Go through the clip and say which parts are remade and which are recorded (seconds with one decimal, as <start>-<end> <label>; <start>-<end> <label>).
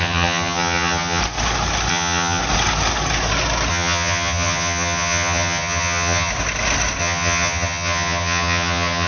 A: 0.0-1.2 remade; 1.2-1.9 recorded; 1.9-2.4 remade; 2.4-3.7 recorded; 3.7-6.3 remade; 6.3-7.0 recorded; 7.0-9.1 remade